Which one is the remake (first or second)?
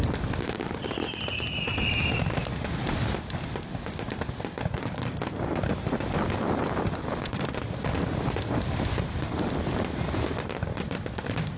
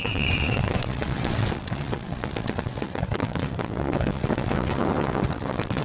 second